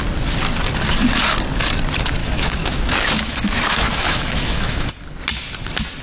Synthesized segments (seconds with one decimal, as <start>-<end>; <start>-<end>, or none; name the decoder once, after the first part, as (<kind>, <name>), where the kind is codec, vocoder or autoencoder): 2.2-4.9 (autoencoder, DAC-VAE)